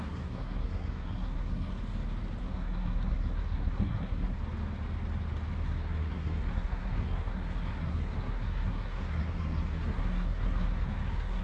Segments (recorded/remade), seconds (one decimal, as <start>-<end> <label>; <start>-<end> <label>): 0.0-1.7 remade; 1.7-2.4 recorded; 2.4-4.4 remade; 4.4-5.6 recorded; 5.6-11.4 remade